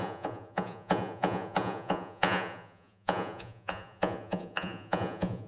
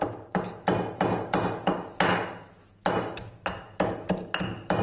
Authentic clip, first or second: second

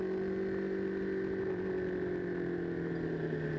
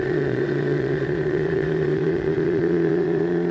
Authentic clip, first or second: first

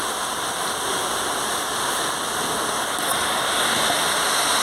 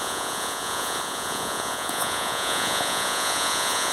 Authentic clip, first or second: first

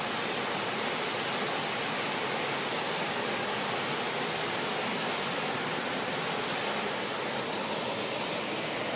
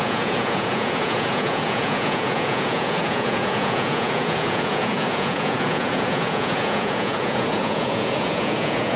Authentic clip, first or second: first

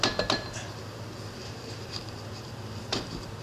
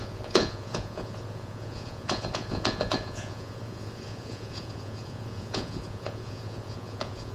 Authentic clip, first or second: first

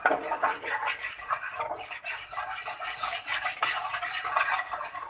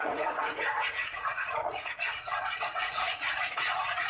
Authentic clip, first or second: first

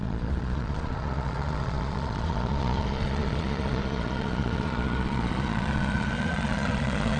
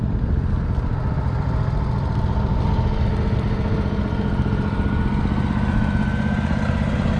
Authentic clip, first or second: second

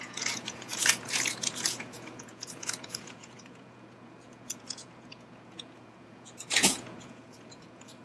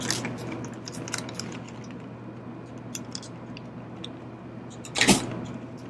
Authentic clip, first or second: second